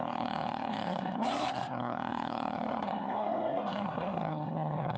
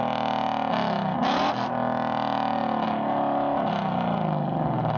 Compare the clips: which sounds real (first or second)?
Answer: second